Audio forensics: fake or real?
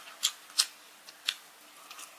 real